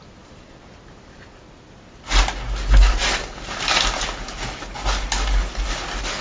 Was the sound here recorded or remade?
recorded